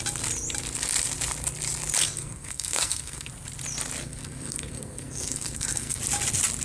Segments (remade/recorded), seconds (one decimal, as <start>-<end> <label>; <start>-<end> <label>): 0.0-2.0 recorded; 2.0-3.3 remade; 3.3-4.0 recorded; 4.0-6.0 remade; 6.0-6.6 recorded